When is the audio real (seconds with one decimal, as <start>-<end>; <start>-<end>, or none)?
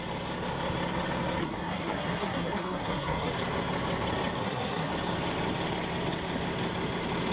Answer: 0.0-1.4; 3.3-4.4; 4.9-7.3